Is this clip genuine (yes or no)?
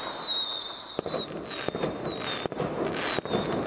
yes